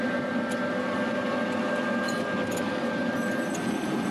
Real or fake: real